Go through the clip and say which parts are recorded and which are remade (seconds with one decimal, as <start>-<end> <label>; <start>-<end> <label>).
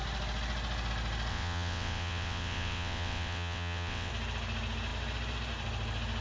0.0-1.3 recorded; 1.3-4.1 remade; 4.1-6.2 recorded